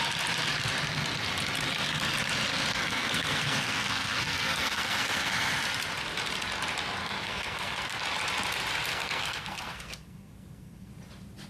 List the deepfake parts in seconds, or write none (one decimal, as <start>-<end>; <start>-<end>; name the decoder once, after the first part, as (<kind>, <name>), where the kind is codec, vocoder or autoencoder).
2.7-5.5 (codec, SNAC); 7.0-8.0; 8.9-10.9